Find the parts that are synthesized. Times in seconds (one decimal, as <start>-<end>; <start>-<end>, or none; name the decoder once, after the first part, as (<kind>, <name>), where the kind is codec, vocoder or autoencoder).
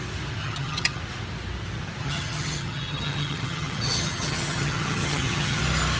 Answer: 0.4-1.0 (vocoder, HiFi-GAN); 2.0-5.6